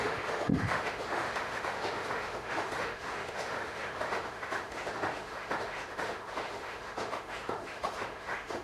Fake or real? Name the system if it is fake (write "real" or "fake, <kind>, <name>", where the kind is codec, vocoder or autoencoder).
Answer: fake, autoencoder, DAC-VAE